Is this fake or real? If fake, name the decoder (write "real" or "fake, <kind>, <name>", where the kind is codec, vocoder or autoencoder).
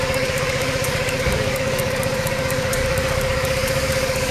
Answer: fake, codec, DAC